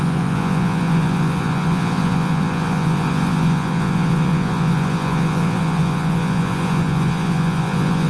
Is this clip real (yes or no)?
no